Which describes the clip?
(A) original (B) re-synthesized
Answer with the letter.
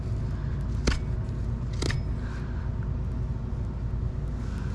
A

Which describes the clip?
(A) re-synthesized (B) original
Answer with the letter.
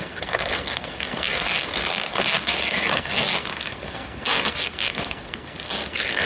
A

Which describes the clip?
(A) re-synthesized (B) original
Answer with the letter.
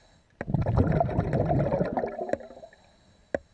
B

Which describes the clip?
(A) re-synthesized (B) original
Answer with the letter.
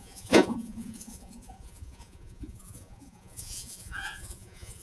A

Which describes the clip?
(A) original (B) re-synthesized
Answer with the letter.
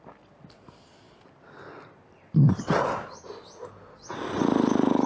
A